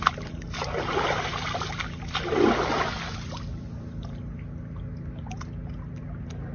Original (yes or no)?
yes